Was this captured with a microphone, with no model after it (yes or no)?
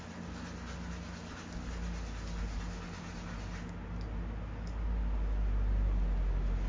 yes